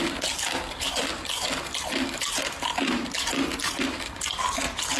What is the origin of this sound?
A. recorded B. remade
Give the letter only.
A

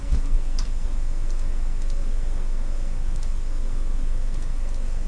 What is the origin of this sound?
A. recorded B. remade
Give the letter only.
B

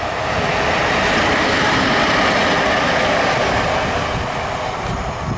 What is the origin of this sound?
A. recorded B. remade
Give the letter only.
A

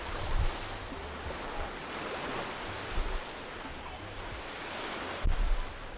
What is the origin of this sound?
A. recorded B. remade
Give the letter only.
A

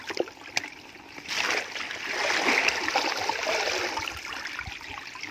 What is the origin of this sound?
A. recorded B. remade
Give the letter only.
A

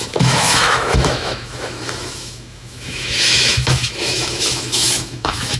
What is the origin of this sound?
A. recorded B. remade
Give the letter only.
B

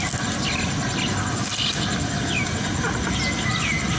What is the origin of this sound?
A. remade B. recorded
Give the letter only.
B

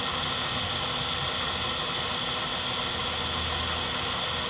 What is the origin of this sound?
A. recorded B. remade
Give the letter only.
A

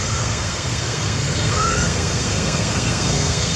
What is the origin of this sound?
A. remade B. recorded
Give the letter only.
A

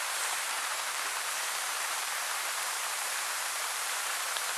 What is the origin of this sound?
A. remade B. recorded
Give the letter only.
A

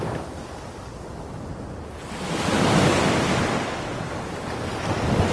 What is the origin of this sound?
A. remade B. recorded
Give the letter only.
B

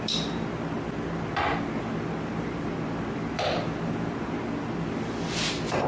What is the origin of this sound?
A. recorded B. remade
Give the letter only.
A